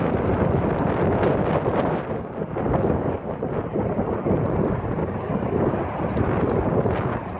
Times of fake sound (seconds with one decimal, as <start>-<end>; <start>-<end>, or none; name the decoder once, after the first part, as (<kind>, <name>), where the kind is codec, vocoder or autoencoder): 2.4-3.4 (codec, DAC); 5.0-5.8